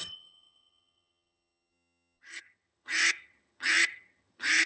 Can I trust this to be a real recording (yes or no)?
no